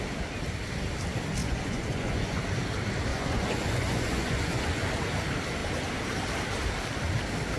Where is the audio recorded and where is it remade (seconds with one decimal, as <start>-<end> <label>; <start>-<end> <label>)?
0.0-1.4 recorded; 1.4-2.4 remade; 2.4-3.1 recorded; 3.1-4.9 remade; 4.9-7.6 recorded